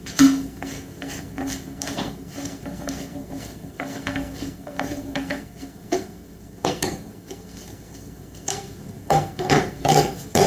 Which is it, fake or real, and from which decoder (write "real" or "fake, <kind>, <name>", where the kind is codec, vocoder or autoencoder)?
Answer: fake, codec, SNAC